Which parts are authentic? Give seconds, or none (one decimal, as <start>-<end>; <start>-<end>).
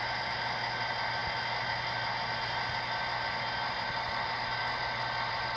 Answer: 0.0-5.6